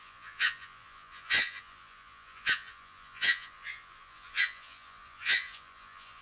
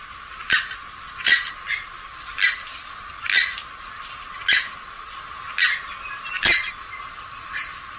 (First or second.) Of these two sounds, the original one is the second